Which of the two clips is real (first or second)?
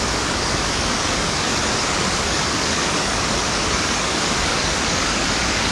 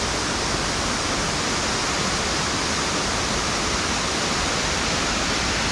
second